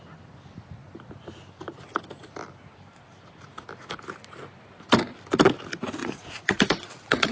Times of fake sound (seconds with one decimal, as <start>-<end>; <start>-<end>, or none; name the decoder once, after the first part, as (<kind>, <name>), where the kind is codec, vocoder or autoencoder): 6.0-7.3 (vocoder, Vocos)

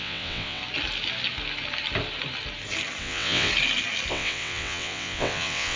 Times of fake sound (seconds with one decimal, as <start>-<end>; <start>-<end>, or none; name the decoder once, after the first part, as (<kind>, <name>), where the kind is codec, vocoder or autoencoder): 0.0-0.6 (vocoder, WaveNeXt); 3.0-3.5; 4.1-5.8

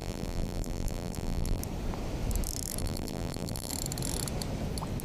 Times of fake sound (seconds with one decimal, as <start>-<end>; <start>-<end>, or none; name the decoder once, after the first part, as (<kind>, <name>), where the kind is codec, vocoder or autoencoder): 0.0-1.6 (vocoder, BigVGAN v2); 2.8-3.7

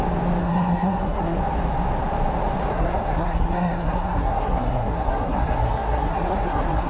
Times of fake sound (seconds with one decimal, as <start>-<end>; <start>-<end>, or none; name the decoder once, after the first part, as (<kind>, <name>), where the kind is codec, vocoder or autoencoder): 0.4-1.4 (codec, SNAC); 2.7-6.9

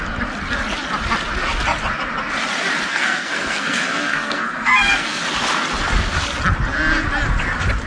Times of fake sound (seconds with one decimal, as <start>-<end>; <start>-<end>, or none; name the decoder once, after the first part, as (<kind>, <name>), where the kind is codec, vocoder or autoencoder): 2.9-5.2 (codec, SNAC)